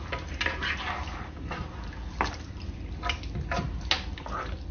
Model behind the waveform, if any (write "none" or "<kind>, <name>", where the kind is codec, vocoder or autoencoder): none